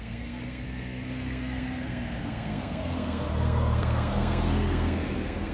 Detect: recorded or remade remade